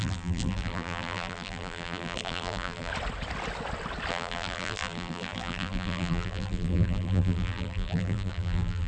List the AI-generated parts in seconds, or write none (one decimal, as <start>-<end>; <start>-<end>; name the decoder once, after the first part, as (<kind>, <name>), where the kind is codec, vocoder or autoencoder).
0.0-2.9 (vocoder, BigVGAN v2); 4.1-8.9